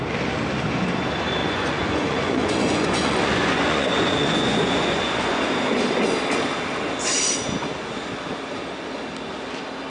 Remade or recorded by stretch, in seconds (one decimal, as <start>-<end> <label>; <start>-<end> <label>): 0.0-1.4 recorded; 1.4-5.4 remade; 5.4-9.9 recorded

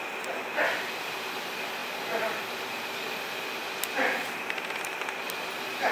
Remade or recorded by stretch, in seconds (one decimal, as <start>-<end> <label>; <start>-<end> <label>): 0.0-5.9 recorded

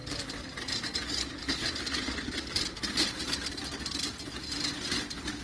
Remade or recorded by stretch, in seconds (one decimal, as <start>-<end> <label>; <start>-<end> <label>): 0.0-3.2 recorded; 3.2-5.4 remade

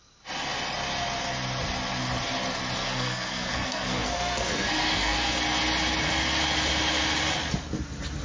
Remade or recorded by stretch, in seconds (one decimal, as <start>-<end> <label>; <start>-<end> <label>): 0.0-2.8 recorded; 2.8-5.3 remade; 5.3-8.2 recorded

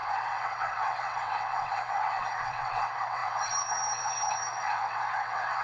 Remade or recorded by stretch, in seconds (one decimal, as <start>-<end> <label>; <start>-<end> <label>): 0.0-5.6 remade

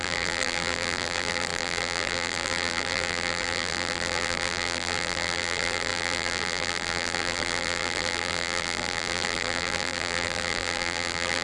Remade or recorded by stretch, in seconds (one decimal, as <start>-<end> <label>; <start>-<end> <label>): 0.0-11.4 remade

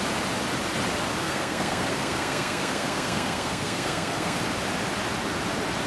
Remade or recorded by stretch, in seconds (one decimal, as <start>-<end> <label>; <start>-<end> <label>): 0.0-1.2 recorded; 1.2-4.4 remade; 4.4-5.9 recorded